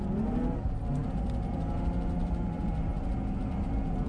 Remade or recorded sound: recorded